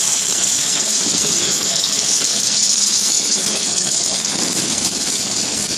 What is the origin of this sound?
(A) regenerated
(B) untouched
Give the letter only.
A